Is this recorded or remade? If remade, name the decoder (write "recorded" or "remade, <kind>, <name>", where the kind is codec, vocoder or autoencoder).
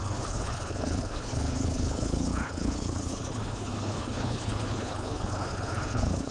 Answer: remade, codec, HILCodec